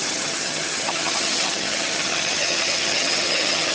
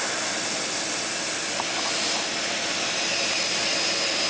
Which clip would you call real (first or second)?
second